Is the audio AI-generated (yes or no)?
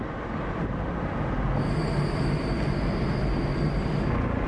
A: no